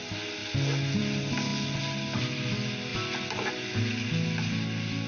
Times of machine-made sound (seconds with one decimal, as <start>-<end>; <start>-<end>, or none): none